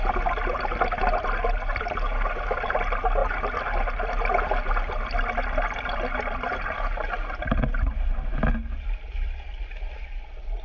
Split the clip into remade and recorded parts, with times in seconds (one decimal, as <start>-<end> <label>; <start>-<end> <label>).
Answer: 0.0-10.6 recorded